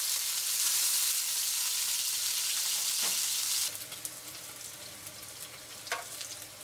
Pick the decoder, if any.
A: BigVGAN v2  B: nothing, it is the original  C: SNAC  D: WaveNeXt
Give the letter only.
B